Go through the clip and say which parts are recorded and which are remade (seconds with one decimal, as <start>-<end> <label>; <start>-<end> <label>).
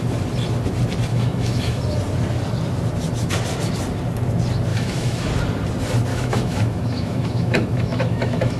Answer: 0.0-1.1 recorded; 1.1-1.8 remade; 1.8-4.7 recorded; 4.7-5.3 remade; 5.3-6.1 recorded; 6.1-8.6 remade